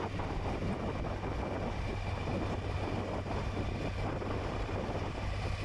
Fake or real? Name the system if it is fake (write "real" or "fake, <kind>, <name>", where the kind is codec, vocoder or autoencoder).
real